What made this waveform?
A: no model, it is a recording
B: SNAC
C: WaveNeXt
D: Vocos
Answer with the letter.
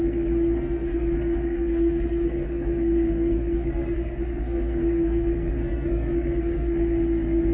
B